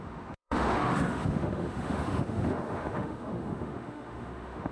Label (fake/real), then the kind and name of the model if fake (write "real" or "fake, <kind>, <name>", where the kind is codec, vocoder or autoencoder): fake, autoencoder, DAC-VAE